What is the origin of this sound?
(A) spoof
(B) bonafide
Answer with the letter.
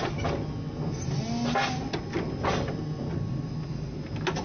B